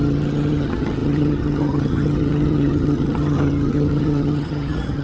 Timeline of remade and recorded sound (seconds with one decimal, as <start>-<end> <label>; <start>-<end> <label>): 0.0-5.0 remade